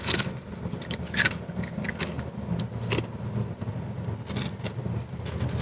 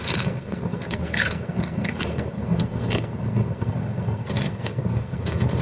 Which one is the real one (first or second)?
first